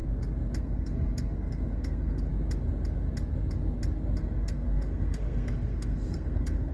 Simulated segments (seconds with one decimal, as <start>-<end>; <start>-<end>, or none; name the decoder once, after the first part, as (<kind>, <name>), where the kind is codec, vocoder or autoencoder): 0.6-2.3 (codec, SNAC); 4.2-6.7